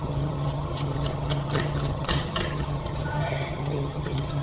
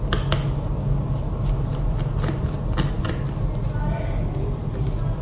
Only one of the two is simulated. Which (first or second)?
first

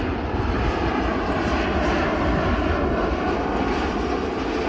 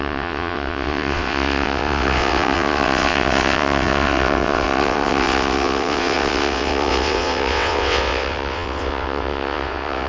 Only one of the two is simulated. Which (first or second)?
second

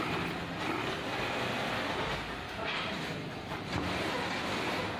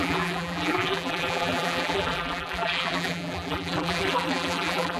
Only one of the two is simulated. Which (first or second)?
second